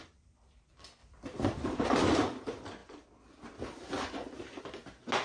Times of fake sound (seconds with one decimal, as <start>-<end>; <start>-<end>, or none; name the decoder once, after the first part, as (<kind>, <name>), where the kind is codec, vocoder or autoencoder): 1.0-1.9 (vocoder, BigVGAN v2)